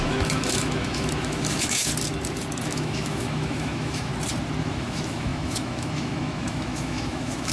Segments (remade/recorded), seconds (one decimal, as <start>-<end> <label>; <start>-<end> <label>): 0.0-1.9 remade; 1.9-2.6 recorded; 2.6-4.1 remade; 4.1-4.6 recorded; 4.6-7.5 remade